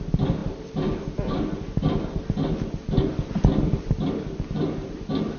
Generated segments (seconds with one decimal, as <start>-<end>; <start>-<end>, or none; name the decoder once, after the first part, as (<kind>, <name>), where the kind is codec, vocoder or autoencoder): 0.4-1.0 (vocoder, BigVGAN v2)